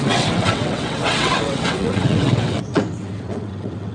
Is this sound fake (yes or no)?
yes